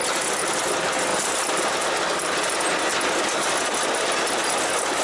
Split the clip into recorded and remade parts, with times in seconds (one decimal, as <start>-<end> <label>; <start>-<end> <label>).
0.0-5.0 recorded